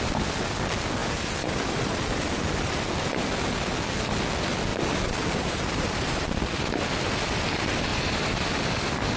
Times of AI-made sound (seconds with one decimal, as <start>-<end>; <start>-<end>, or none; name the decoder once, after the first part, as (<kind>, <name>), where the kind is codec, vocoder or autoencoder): 1.0-2.8 (vocoder, BigVGAN v2); 4.7-6.4; 7.9-8.5